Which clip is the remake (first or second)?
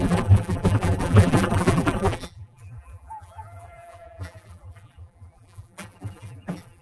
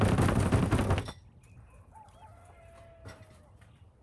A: first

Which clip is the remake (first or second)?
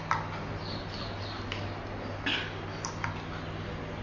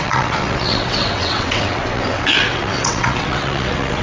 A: second